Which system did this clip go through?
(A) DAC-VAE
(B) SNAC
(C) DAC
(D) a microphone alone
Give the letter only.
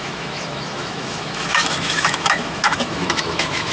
A